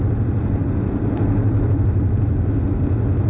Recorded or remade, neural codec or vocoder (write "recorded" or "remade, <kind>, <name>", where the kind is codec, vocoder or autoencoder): recorded